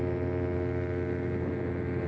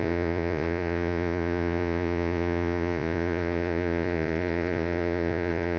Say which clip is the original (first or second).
first